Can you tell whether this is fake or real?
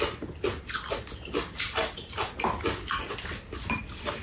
real